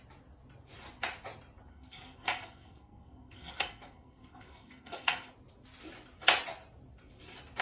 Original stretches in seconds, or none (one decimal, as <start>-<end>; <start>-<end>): 0.0-1.7; 5.3-7.6